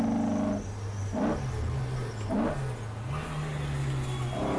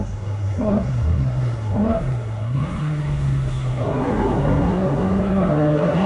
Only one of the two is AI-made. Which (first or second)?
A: second